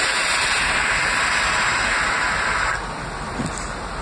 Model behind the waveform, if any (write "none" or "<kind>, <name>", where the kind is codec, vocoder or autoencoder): none